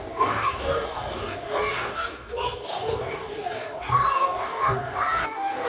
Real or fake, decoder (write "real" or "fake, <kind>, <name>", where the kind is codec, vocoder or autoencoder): fake, codec, DAC